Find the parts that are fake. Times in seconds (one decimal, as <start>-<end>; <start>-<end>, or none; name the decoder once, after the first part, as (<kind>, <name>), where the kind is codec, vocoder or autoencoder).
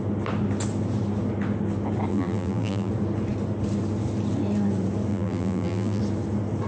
2.1-2.9 (vocoder, BigVGAN v2); 5.1-6.0